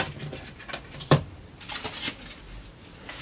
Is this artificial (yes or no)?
no